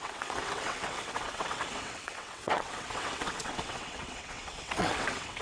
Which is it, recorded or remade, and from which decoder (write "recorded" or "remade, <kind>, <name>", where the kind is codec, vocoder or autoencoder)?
remade, vocoder, WaveNeXt